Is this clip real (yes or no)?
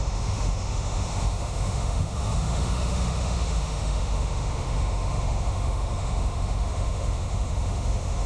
no